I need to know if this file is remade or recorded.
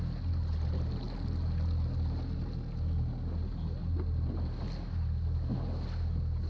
recorded